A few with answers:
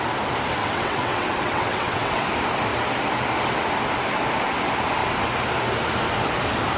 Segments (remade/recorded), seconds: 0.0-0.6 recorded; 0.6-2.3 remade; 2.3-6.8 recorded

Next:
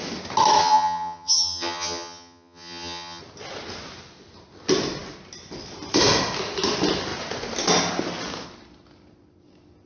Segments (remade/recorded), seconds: 0.0-0.6 recorded; 0.6-3.2 remade; 3.2-9.9 recorded

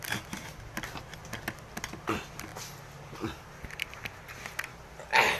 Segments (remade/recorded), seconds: 0.0-5.4 recorded

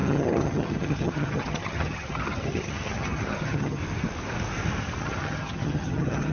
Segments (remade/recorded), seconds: 0.0-3.8 remade; 3.8-5.0 recorded; 5.0-6.3 remade

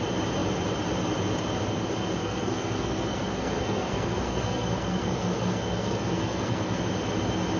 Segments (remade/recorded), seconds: 0.0-2.2 recorded; 2.2-6.8 remade; 6.8-7.6 recorded